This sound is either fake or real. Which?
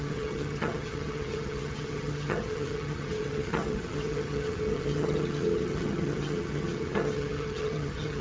fake